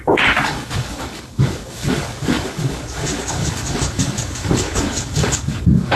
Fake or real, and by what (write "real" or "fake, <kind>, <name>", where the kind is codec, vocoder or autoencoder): fake, codec, DAC